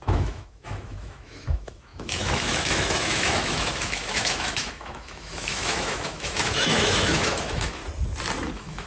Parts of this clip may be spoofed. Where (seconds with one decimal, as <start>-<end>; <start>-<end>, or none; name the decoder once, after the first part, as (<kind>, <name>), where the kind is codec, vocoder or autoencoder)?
0.0-7.8 (autoencoder, DAC-VAE); 8.5-8.9